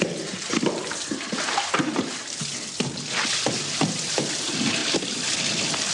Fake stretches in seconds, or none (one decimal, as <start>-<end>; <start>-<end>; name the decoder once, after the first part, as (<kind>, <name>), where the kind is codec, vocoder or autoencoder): none